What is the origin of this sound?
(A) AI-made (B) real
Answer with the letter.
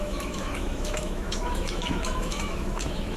A